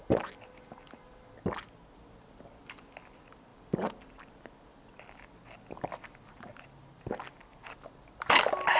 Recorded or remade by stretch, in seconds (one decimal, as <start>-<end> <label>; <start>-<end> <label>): 0.0-8.8 recorded